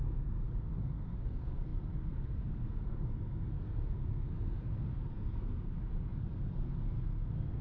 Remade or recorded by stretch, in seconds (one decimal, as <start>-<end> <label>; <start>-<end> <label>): 0.0-7.6 remade